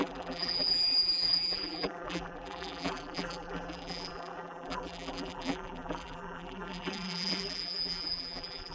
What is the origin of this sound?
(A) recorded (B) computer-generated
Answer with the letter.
B